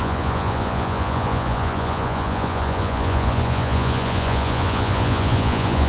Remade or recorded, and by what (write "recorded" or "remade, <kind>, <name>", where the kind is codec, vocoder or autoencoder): remade, vocoder, Vocos